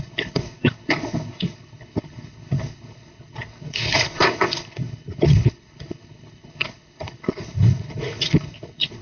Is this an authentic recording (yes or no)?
no